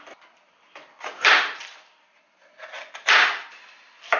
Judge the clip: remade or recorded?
recorded